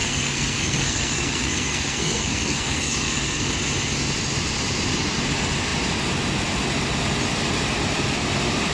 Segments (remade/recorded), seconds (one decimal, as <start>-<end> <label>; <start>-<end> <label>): 0.0-3.5 remade; 3.5-8.7 recorded